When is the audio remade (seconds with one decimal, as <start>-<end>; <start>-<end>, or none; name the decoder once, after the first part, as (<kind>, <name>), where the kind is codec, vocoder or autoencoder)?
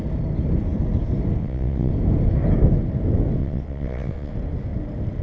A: 1.4-1.9 (vocoder, WaveNeXt); 3.4-4.3